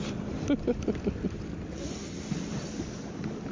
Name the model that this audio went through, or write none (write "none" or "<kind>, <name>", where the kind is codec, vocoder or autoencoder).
none